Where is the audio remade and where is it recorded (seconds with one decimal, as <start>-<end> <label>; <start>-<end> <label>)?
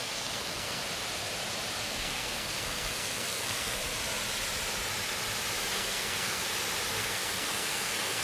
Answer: 0.0-0.8 remade; 0.8-1.8 recorded; 1.8-3.8 remade; 3.8-5.7 recorded; 5.7-6.4 remade; 6.4-6.9 recorded; 6.9-8.2 remade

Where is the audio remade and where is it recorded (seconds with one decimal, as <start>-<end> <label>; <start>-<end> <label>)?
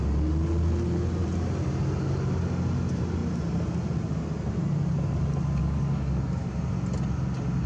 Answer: 0.0-5.6 recorded; 5.6-6.5 remade; 6.5-7.7 recorded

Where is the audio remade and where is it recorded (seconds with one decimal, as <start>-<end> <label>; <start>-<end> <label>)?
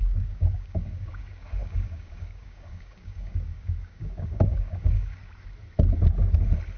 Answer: 0.0-5.2 remade; 5.2-6.8 recorded